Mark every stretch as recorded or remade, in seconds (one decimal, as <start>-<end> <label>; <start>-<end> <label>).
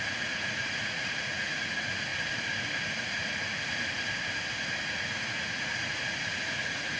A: 0.0-2.1 remade; 2.1-2.9 recorded; 2.9-3.3 remade; 3.3-4.8 recorded; 4.8-7.0 remade